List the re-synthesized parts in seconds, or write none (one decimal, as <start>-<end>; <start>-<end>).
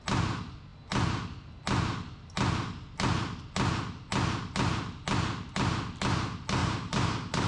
6.6-7.5